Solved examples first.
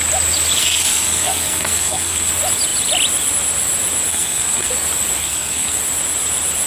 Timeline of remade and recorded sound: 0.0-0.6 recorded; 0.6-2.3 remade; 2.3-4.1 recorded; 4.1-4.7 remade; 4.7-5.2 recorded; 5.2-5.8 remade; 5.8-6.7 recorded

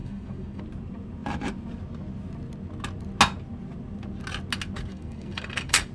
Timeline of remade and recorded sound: 0.0-0.6 remade; 0.6-4.9 recorded; 4.9-5.9 remade

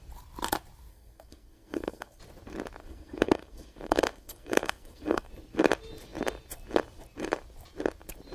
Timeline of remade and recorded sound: 0.0-0.9 recorded; 0.9-2.2 remade; 2.2-2.8 recorded; 2.8-5.3 remade; 5.3-8.3 recorded